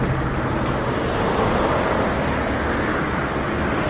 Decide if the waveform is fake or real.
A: real